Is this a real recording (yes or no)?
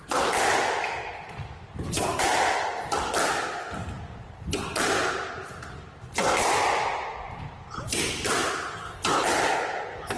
yes